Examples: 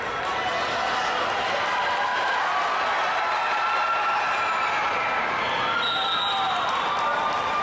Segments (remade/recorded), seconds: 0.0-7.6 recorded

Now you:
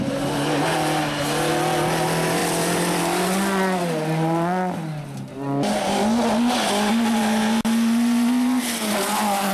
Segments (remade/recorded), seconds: 0.0-9.5 recorded

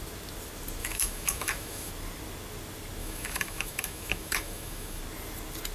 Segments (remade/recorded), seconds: 0.0-0.8 recorded; 0.8-1.9 remade; 1.9-3.0 recorded; 3.0-5.0 remade; 5.0-5.7 recorded

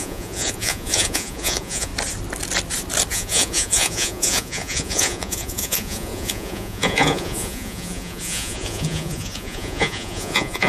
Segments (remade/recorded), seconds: 0.0-1.9 remade; 1.9-3.1 recorded; 3.1-10.7 remade

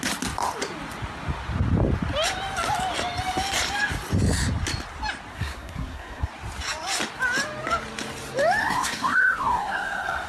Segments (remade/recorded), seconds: 0.0-5.3 recorded; 5.3-6.3 remade; 6.3-8.6 recorded; 8.6-10.3 remade

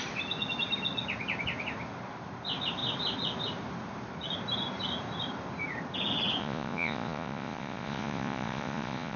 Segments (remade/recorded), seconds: 0.0-6.4 recorded; 6.4-9.2 remade

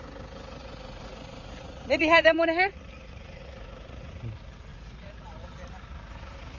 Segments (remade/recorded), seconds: 0.0-0.6 recorded; 0.6-4.1 remade; 4.1-4.7 recorded; 4.7-5.3 remade; 5.3-6.6 recorded